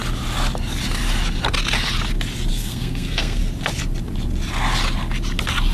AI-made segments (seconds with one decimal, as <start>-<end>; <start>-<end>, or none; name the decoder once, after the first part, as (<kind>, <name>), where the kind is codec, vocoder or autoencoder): 2.5-3.4 (codec, SNAC)